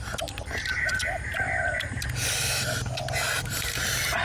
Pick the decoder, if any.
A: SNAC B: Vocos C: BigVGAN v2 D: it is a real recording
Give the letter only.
D